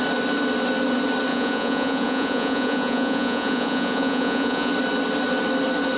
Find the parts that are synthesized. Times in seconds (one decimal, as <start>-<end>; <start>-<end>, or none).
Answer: 1.3-4.7